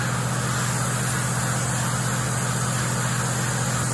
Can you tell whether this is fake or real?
real